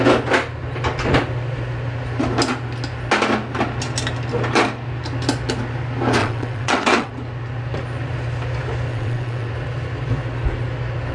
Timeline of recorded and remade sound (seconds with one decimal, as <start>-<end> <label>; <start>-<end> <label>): 0.0-6.2 recorded; 6.2-7.1 remade; 7.1-8.9 recorded; 8.9-9.5 remade; 9.5-11.1 recorded